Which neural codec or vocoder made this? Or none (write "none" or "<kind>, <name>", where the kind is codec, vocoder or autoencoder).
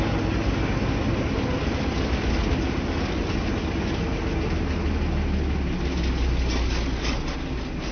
none